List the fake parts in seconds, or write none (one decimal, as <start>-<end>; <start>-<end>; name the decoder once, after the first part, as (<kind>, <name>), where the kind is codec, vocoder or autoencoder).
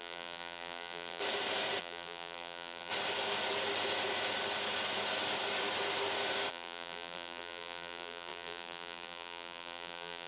0.0-1.2 (vocoder, BigVGAN v2); 1.8-2.9; 6.5-10.3